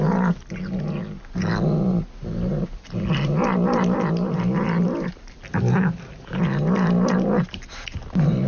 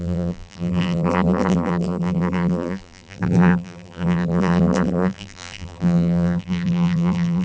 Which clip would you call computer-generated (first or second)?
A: second